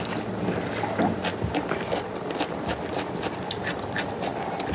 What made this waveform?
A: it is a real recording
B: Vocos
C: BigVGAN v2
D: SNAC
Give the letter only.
A